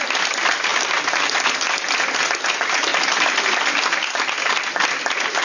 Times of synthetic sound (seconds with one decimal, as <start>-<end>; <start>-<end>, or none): none